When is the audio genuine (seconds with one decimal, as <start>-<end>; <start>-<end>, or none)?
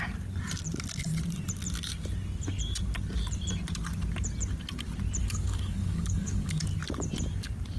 0.0-5.2; 6.6-7.8